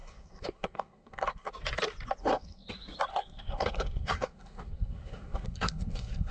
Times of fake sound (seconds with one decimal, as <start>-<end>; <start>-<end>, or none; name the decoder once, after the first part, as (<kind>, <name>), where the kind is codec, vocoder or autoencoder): 0.0-1.5 (codec, SNAC); 2.2-2.7; 3.1-6.3